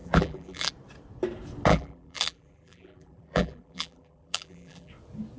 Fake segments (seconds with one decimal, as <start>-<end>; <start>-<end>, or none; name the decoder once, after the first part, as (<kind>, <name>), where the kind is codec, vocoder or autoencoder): 0.0-0.7 (vocoder, BigVGAN v2); 1.7-4.9